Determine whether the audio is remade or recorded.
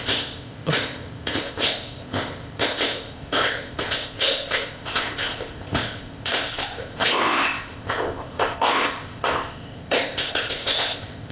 remade